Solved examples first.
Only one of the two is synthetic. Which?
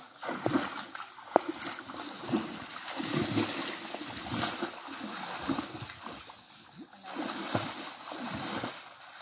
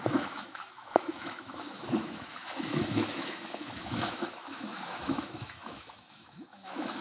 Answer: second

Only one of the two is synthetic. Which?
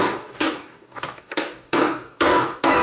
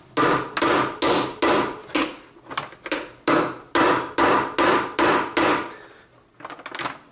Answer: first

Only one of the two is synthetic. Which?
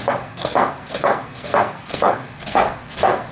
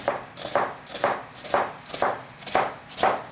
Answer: first